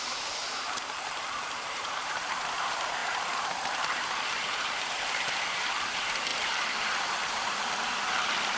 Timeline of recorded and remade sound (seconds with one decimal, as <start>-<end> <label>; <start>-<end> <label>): 0.0-8.6 remade